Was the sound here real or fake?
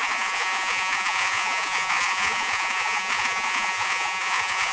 fake